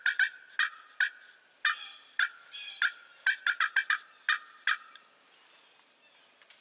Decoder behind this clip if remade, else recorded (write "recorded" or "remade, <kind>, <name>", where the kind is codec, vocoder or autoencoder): recorded